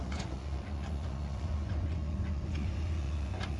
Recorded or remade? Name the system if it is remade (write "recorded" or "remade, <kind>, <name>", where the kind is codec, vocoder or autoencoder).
remade, vocoder, Vocos